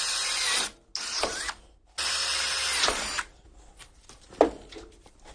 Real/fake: real